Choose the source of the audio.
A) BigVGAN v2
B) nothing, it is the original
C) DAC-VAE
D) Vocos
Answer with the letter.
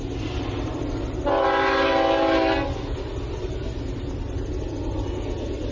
B